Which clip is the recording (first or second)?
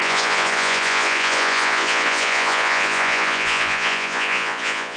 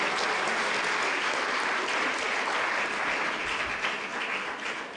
second